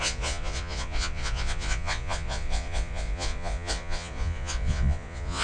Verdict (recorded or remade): remade